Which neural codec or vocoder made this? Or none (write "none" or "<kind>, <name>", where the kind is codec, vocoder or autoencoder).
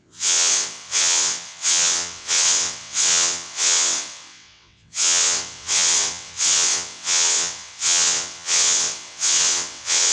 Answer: vocoder, WaveNeXt